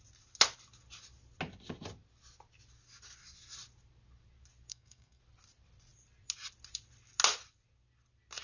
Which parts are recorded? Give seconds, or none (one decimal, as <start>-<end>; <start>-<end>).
0.0-4.7; 5.2-8.4